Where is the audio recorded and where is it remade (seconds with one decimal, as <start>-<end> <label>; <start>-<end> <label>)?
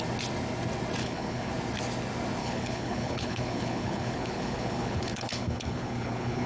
0.0-1.0 recorded; 1.0-1.5 remade; 1.5-2.4 recorded; 2.4-6.5 remade